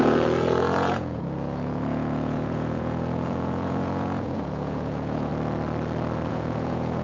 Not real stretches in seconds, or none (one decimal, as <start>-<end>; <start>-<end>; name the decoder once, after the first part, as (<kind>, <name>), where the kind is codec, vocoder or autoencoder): 0.0-5.3 (vocoder, Vocos); 6.3-7.0